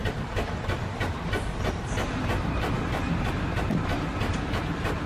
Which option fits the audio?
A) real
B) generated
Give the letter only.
A